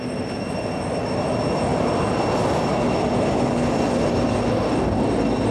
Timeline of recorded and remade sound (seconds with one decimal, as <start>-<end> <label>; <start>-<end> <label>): 0.0-4.5 recorded; 4.5-5.1 remade; 5.1-5.5 recorded